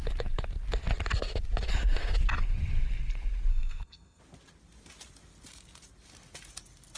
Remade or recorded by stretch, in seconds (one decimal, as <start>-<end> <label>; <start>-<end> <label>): 0.0-3.5 recorded; 3.5-4.2 remade; 4.2-7.0 recorded